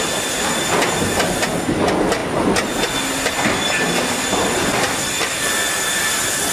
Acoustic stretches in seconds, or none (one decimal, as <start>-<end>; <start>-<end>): 0.0-6.5